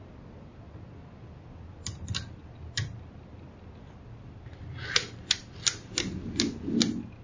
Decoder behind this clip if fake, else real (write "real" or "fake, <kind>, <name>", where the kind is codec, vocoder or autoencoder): real